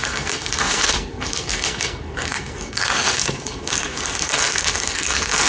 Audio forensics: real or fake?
fake